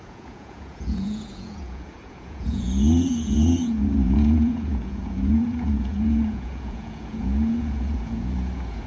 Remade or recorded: remade